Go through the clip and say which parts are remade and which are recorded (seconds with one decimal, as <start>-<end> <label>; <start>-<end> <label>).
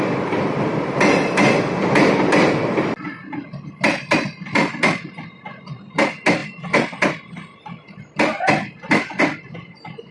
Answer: 0.0-10.1 recorded